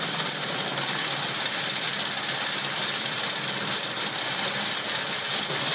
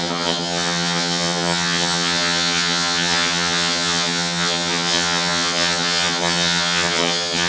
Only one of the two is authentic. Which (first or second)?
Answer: first